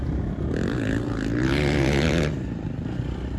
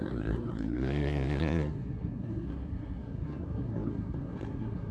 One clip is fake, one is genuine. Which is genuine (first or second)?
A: first